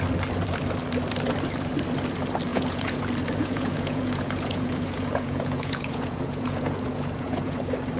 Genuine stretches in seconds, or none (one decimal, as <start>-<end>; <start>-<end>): 0.0-2.5; 3.0-3.4; 7.6-8.0

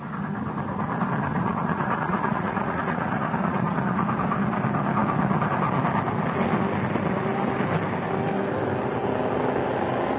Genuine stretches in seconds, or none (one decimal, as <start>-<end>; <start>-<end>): 0.0-1.3; 3.8-10.2

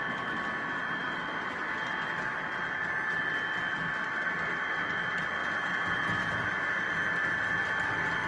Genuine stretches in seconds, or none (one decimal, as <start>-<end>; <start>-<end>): 0.0-5.4; 6.5-8.3

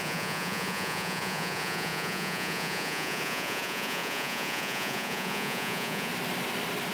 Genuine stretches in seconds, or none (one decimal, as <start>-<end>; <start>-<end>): 6.1-6.9

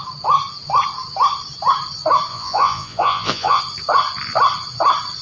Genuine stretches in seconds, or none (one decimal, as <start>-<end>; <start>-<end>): 0.0-2.3; 3.6-5.2

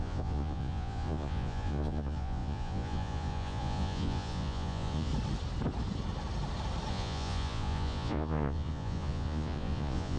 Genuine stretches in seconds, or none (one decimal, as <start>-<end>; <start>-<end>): 5.1-6.9

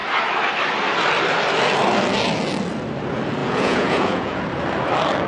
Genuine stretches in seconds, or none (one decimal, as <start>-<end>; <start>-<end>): 0.0-3.4; 4.4-5.3